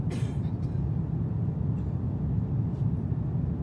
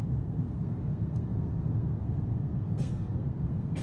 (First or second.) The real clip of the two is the first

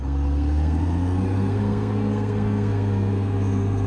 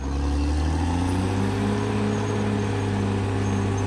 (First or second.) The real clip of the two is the second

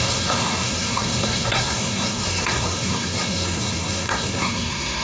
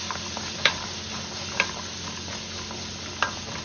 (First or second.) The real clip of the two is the second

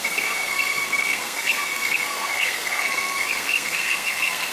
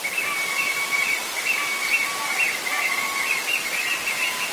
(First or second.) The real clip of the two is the second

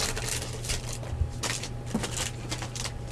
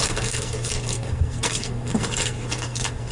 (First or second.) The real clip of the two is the first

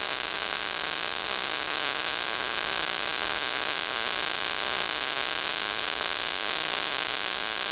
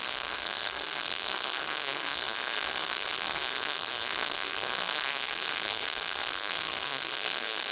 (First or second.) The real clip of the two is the first